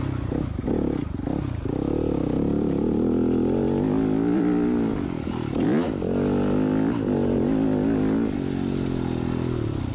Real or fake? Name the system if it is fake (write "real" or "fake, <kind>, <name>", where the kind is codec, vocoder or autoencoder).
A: real